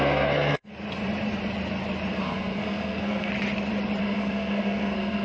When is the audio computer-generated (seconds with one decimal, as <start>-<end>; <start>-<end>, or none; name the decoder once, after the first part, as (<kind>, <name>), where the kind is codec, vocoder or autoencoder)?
0.0-0.7 (codec, SNAC); 2.1-3.3; 4.0-5.2